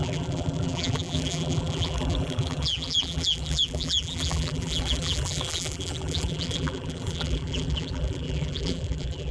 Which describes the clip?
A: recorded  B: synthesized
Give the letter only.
B